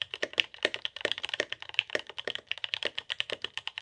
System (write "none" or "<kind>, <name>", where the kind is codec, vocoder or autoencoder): vocoder, BigVGAN v2